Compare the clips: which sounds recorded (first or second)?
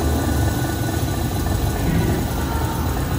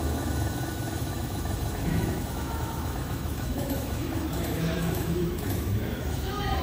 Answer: first